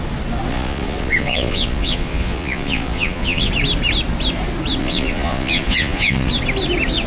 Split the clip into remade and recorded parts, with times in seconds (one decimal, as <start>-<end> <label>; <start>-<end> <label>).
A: 0.0-0.5 recorded; 0.5-3.5 remade; 3.5-4.8 recorded; 4.8-6.3 remade; 6.3-7.1 recorded